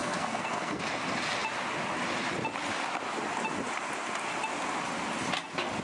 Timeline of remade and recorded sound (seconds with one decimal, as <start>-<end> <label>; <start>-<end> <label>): 0.0-0.8 remade; 0.8-5.8 recorded